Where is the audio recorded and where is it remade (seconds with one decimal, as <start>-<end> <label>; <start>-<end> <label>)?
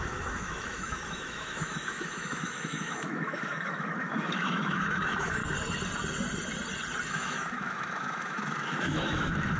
0.0-5.4 remade; 5.4-7.1 recorded; 7.1-9.6 remade